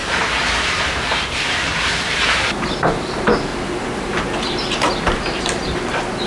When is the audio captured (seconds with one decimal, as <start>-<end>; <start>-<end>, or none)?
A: 3.1-3.5; 5.8-6.3